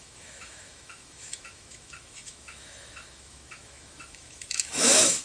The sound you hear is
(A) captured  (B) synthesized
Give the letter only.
B